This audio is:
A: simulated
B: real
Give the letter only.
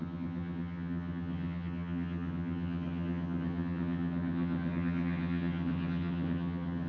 A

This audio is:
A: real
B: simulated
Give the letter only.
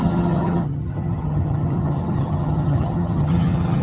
B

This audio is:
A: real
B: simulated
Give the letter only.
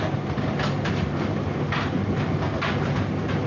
A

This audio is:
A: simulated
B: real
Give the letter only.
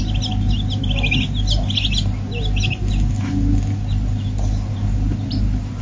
B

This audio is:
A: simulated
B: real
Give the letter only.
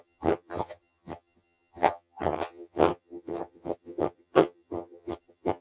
A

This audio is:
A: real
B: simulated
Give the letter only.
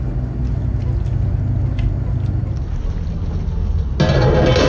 A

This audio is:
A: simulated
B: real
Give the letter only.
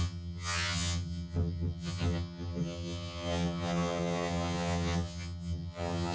A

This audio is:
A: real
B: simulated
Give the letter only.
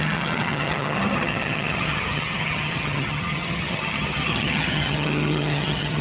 B